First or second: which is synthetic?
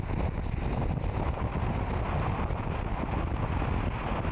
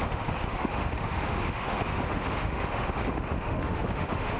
second